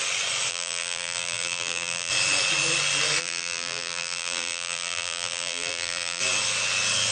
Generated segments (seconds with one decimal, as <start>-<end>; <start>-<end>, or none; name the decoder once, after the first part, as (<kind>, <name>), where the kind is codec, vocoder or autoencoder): 0.5-2.1 (vocoder, BigVGAN v2); 3.2-6.2

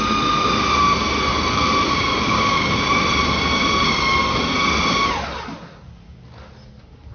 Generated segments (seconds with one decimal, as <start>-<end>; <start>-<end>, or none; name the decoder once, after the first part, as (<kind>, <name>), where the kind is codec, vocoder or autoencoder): 1.3-3.6 (vocoder, BigVGAN v2)